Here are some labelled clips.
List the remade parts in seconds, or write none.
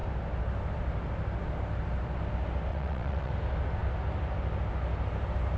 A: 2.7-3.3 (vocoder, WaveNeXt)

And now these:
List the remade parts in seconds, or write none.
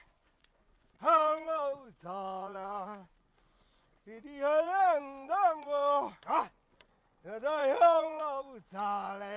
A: 0.0-9.4 (vocoder, Vocos)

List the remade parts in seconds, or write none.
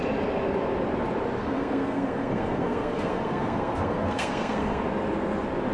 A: 1.4-4.8 (codec, SNAC)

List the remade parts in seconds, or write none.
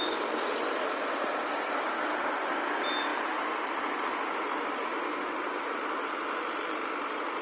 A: none